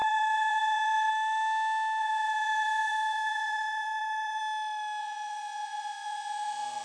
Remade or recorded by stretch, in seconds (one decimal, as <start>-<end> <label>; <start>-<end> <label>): 0.0-1.1 remade; 1.1-2.0 recorded; 2.0-4.4 remade; 4.4-5.0 recorded; 5.0-6.8 remade